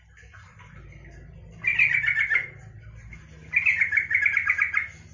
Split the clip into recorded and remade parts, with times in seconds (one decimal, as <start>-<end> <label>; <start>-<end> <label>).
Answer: 0.0-5.1 recorded